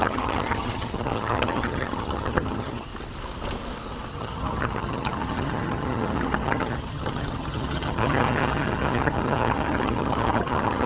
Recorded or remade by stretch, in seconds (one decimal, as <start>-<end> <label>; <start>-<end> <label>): 0.0-2.9 remade; 2.9-4.1 recorded; 4.1-10.9 remade